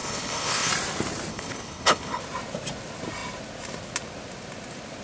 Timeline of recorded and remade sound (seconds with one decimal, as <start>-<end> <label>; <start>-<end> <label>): 0.0-0.7 remade; 0.7-1.3 recorded; 1.3-2.2 remade; 2.2-5.0 recorded